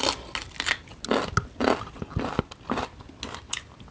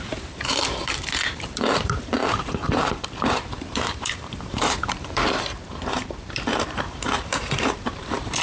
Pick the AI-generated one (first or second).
second